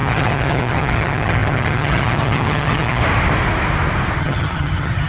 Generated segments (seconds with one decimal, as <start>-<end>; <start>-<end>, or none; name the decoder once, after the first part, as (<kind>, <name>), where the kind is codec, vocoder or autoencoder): 0.0-3.0 (vocoder, HiFi-GAN); 4.2-5.1